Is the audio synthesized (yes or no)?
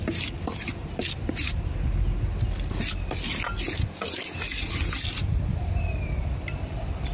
no